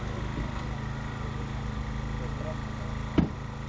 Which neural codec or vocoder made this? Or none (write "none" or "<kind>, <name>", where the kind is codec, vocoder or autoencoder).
none